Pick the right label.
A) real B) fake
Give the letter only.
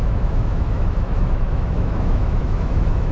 B